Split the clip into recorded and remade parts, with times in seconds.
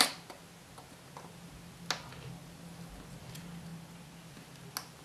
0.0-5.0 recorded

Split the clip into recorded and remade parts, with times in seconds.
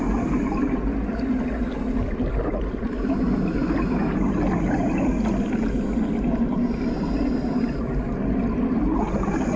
0.0-9.6 recorded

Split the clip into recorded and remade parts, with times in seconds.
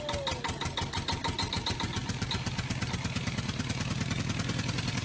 0.0-5.0 recorded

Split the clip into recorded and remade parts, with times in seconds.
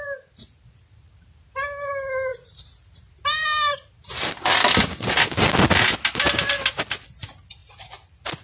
0.0-8.4 recorded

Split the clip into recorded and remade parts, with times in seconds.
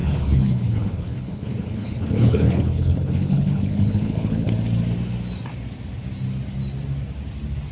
0.0-4.5 remade; 4.5-7.7 recorded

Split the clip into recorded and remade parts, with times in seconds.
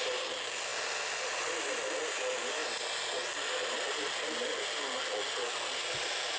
0.0-6.4 recorded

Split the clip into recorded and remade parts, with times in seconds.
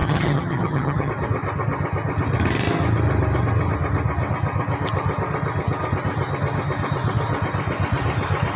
0.0-1.1 remade; 1.1-8.6 recorded